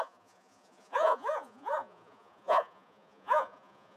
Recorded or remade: remade